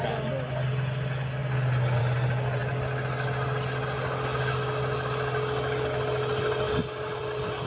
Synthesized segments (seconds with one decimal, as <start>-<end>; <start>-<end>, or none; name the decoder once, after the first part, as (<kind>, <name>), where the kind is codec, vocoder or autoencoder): none